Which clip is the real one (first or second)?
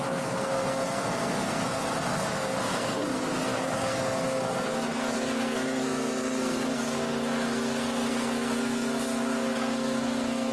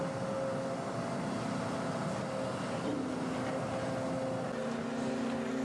second